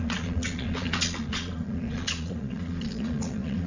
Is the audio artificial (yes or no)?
yes